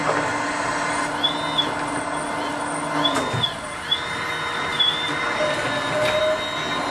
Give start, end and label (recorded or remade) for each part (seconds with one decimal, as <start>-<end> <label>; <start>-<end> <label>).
0.0-6.9 recorded